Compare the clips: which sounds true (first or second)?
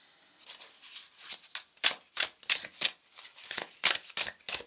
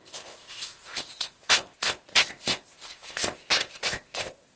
first